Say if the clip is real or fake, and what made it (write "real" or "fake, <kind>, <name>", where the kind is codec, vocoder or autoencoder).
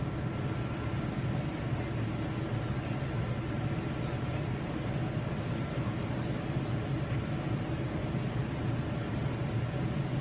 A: real